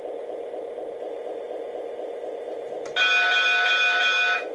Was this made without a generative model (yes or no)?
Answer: yes